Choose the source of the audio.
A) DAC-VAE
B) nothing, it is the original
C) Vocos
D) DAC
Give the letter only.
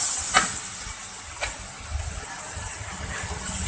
B